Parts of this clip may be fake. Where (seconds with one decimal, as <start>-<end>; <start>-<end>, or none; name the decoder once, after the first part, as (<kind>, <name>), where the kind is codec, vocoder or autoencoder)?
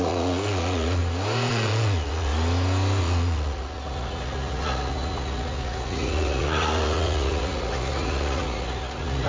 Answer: 0.0-1.0 (vocoder, Vocos); 1.5-2.3; 3.0-9.3